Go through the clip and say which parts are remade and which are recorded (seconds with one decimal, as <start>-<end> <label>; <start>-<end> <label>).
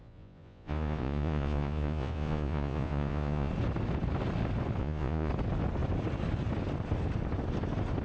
0.0-3.5 remade; 3.5-4.8 recorded; 4.8-5.3 remade; 5.3-8.0 recorded